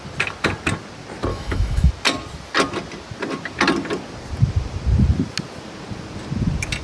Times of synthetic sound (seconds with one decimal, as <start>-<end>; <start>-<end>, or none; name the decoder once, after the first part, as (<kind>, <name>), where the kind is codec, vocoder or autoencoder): 1.3-1.9 (autoencoder, DAC-VAE)